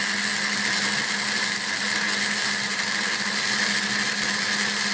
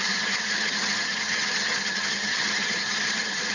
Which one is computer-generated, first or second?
second